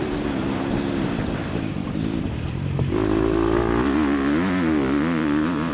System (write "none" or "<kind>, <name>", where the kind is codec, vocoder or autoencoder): none